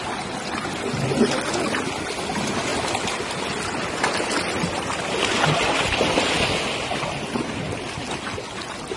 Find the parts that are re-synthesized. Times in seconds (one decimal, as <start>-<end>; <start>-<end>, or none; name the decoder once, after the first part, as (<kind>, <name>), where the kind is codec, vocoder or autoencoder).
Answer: none